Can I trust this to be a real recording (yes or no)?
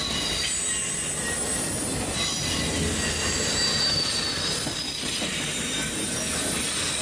yes